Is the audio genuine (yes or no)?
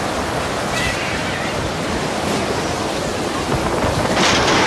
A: yes